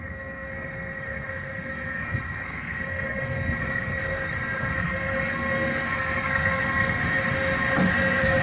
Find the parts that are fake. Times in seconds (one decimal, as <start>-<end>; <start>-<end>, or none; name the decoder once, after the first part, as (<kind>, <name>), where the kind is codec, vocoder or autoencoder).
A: 0.0-7.0 (codec, SNAC); 7.9-8.4